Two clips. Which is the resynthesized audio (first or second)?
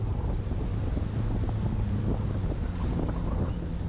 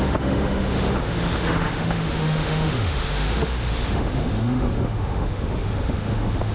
second